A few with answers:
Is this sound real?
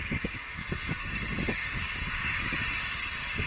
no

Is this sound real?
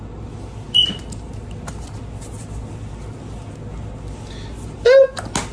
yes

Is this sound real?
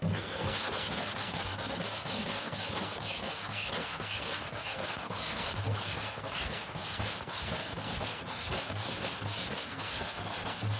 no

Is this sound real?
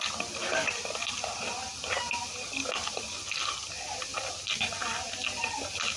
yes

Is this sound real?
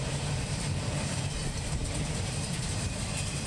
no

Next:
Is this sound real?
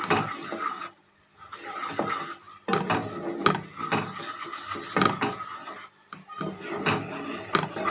yes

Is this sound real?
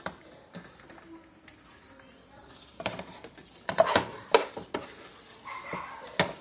yes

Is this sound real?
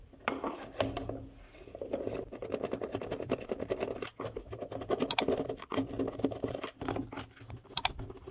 no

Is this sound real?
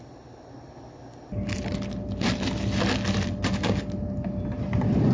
yes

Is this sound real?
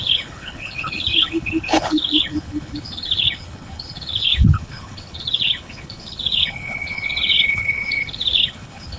no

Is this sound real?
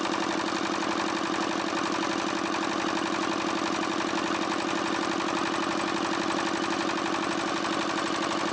yes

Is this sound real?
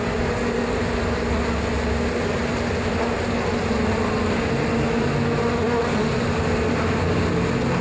yes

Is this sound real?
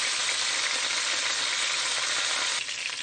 yes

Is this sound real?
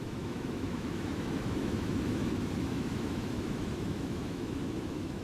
no